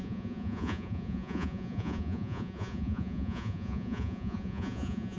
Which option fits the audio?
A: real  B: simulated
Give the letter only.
B